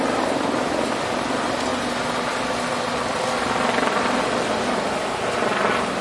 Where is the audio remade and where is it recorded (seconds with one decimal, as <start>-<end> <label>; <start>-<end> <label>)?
0.0-6.0 recorded